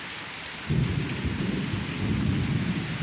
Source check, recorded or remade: recorded